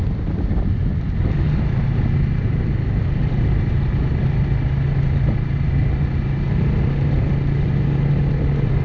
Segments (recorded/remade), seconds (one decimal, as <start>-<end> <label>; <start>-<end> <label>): 0.0-8.8 recorded